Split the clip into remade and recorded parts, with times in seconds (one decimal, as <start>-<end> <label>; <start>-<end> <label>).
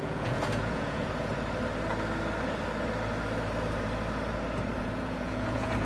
0.0-1.3 remade; 1.3-4.8 recorded; 4.8-5.8 remade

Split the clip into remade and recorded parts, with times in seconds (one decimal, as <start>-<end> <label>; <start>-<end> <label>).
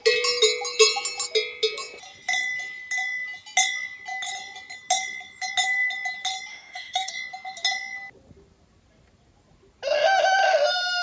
0.0-6.5 recorded; 6.5-7.1 remade; 7.1-11.0 recorded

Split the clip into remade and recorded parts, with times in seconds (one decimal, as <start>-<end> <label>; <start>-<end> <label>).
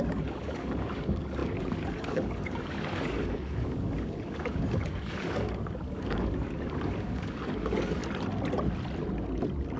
0.0-8.0 remade; 8.0-9.8 recorded